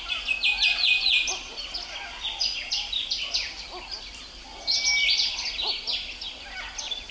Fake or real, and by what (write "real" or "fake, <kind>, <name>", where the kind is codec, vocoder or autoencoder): real